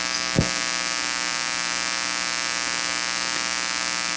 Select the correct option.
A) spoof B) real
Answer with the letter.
B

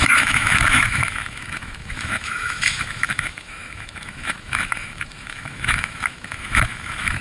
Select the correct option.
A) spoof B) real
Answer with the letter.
A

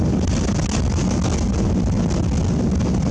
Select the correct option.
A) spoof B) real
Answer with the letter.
B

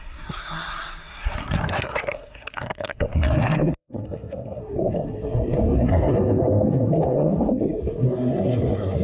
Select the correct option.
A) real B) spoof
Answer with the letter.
B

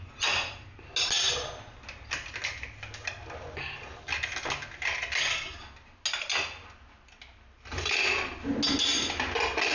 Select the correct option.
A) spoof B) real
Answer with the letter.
B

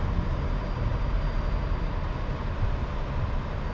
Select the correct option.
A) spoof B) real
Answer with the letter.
B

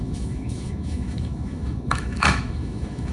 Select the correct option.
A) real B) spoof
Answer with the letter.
B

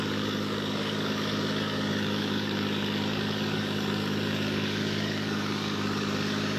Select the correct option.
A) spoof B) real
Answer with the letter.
A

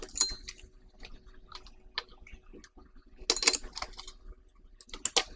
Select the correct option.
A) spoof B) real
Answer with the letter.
B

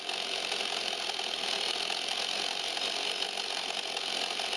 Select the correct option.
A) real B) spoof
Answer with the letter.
A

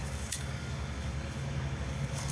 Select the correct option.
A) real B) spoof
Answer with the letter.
B